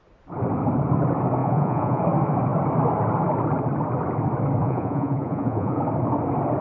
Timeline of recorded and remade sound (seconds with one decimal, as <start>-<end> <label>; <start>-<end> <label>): 0.0-1.4 recorded; 1.4-2.0 remade; 2.0-4.6 recorded; 4.6-5.8 remade; 5.8-6.6 recorded